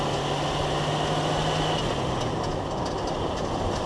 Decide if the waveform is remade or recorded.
recorded